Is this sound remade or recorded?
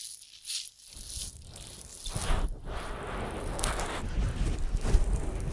recorded